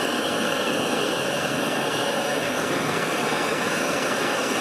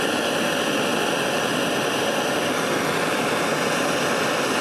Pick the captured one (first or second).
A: second